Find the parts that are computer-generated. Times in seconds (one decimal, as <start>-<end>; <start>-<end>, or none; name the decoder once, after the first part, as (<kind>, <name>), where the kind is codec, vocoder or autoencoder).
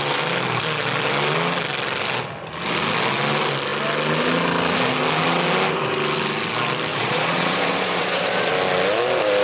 6.9-8.5 (vocoder, Vocos)